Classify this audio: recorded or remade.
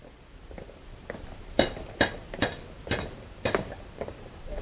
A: remade